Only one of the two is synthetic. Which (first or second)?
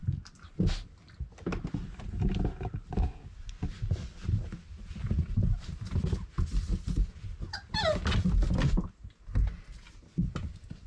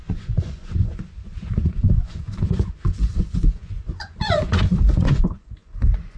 second